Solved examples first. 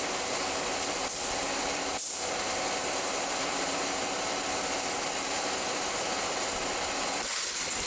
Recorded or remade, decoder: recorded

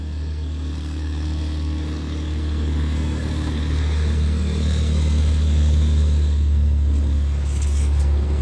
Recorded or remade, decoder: remade, codec, SNAC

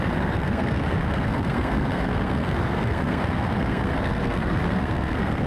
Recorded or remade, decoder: remade, codec, SNAC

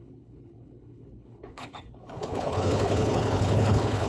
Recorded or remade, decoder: remade, codec, HILCodec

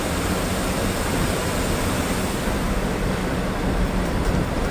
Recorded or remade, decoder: remade, vocoder, BigVGAN v2